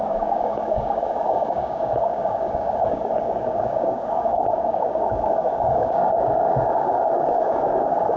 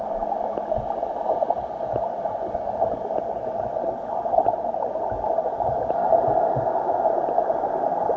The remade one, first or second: first